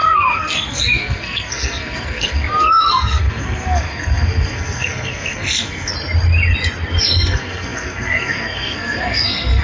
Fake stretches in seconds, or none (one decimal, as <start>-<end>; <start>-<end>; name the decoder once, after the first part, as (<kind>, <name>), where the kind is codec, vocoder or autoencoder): 0.0-5.9 (codec, SNAC); 7.0-9.6